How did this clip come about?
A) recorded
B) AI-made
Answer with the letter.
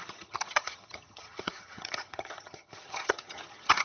B